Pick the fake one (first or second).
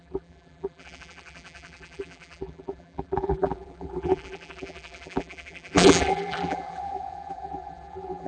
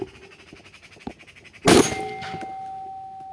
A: first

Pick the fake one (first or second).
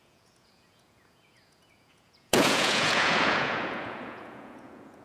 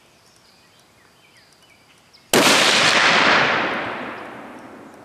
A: first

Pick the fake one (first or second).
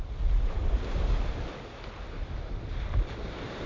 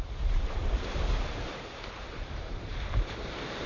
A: second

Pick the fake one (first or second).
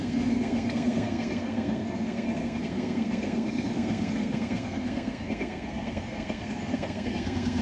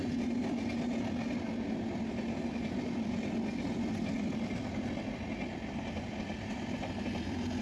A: first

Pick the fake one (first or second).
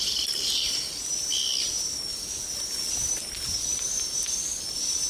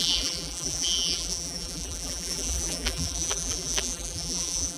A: second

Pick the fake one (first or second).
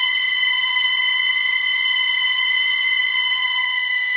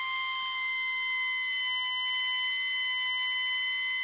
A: first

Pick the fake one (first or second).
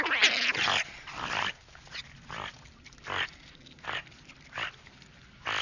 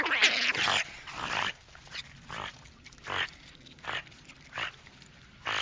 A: second